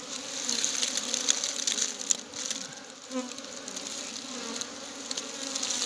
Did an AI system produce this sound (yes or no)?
no